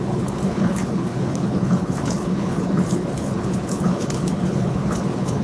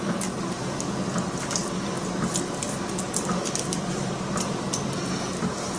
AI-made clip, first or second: first